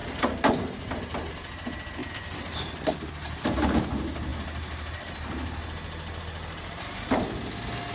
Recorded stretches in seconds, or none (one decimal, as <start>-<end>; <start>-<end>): 0.0-2.0; 3.1-7.9